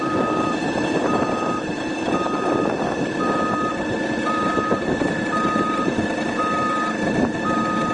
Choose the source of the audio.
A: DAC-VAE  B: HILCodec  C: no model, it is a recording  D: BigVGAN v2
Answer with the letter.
D